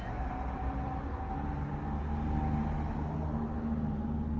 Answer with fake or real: real